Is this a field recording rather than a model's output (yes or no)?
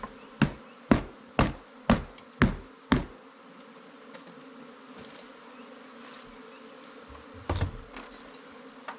yes